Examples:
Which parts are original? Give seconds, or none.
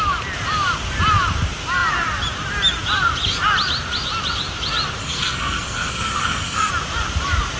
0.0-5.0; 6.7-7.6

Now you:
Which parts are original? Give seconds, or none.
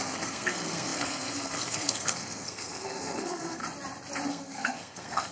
3.6-4.3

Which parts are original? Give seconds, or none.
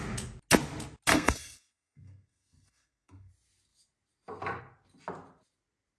0.0-1.1; 3.3-6.0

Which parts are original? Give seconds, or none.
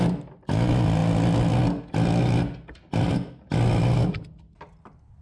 0.0-5.2